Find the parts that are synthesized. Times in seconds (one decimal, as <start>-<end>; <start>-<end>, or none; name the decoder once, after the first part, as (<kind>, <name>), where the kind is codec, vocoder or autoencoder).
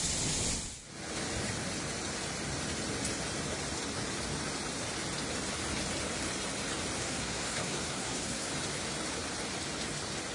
7.0-8.5 (codec, SNAC)